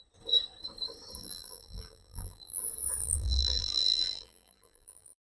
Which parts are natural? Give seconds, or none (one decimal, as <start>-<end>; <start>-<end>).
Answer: 0.0-1.2; 2.6-3.0